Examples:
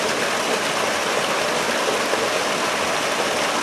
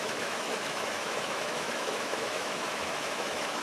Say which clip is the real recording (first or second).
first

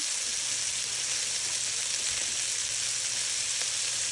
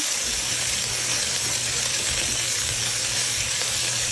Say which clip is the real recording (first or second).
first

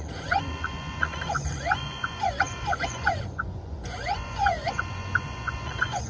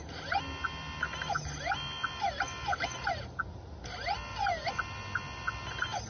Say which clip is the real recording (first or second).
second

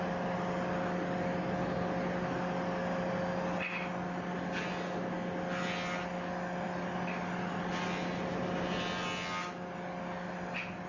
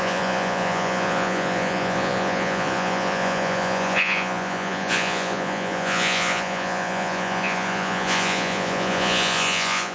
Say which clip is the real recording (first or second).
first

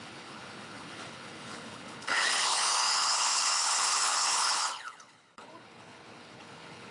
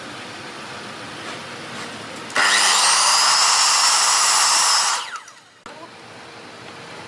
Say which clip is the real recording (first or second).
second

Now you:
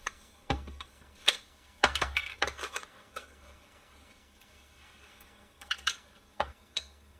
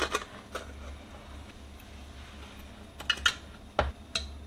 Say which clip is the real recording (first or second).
second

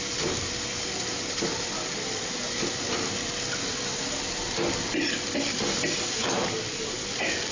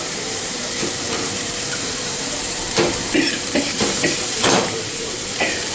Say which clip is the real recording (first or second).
first